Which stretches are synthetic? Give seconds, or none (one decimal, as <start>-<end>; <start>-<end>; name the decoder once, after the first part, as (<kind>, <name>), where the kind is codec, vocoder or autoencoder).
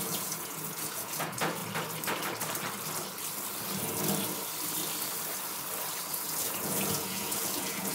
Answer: 0.0-1.6 (vocoder, Vocos); 6.1-7.9